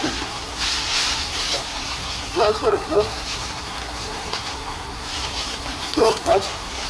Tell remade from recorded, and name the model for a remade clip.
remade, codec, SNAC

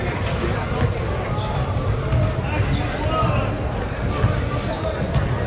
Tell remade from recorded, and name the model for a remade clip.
recorded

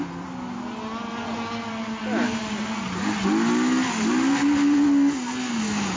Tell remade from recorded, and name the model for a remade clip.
recorded